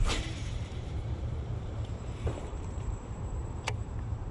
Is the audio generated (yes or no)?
yes